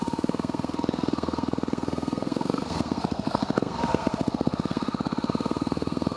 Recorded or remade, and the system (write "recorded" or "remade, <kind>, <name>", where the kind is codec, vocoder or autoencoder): remade, codec, SNAC